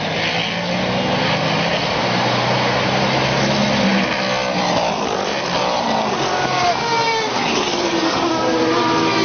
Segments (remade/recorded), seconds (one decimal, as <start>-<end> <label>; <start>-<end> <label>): 0.0-9.2 recorded